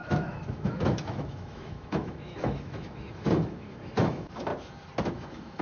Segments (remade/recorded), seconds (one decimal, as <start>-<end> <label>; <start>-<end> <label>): 0.0-4.5 remade; 4.5-5.1 recorded; 5.1-5.6 remade